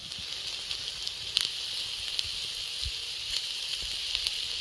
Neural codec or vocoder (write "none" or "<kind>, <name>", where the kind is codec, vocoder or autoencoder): none